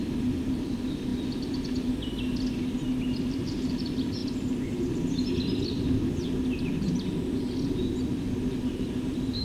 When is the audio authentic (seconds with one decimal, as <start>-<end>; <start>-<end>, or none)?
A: 1.1-3.2; 4.2-8.6